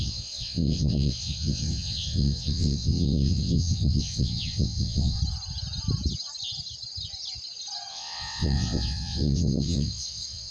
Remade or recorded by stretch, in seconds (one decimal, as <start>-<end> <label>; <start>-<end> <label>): 0.0-5.2 remade; 5.2-7.9 recorded; 7.9-10.5 remade